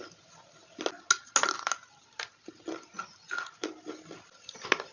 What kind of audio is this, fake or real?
real